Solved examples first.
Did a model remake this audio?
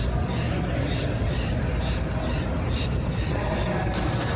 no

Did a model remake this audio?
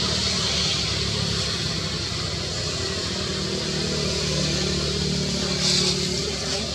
no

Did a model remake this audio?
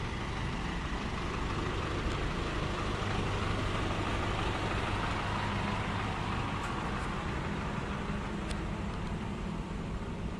no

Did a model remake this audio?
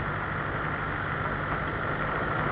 no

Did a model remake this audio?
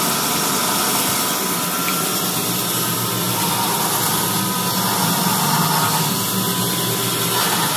no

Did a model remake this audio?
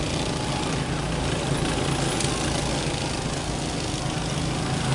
no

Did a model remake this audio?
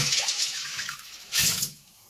yes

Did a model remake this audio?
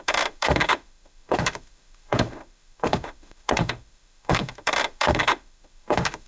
yes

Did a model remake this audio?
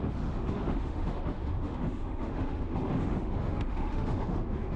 yes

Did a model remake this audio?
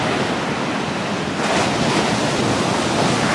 no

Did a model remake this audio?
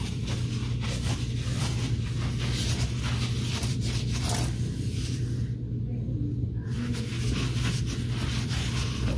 no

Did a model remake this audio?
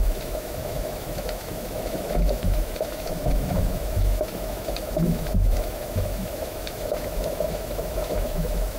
yes